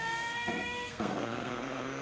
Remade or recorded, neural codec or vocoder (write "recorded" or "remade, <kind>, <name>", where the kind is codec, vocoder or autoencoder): remade, codec, SNAC